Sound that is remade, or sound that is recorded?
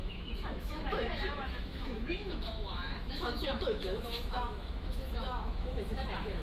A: remade